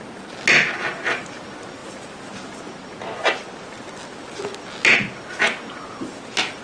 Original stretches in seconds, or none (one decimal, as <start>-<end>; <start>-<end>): 0.0-6.6